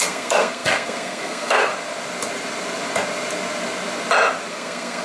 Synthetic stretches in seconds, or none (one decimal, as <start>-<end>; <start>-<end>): 0.0-1.7; 4.5-5.0